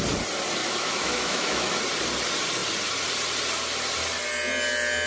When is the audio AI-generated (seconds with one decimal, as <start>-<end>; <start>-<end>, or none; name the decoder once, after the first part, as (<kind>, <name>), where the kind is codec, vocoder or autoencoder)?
0.6-1.8 (autoencoder, DAC-VAE)